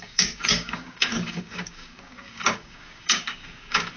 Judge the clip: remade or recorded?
remade